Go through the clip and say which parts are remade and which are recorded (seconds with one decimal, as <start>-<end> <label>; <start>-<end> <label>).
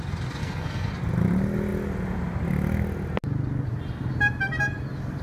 0.0-0.4 recorded; 0.4-0.9 remade; 0.9-5.2 recorded